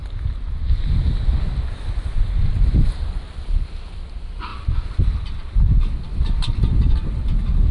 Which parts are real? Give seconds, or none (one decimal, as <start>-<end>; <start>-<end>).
0.0-7.7